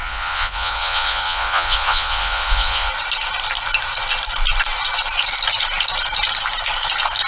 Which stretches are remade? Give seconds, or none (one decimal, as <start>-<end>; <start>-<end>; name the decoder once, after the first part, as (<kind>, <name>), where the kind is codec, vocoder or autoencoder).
0.0-2.9 (vocoder, Vocos)